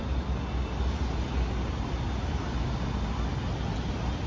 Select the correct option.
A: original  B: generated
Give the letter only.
A